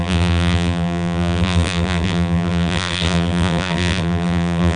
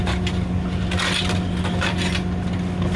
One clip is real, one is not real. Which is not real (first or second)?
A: first